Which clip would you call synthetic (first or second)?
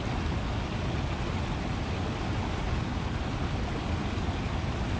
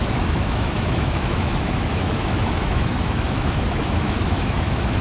second